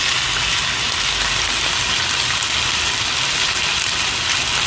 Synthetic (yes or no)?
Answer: no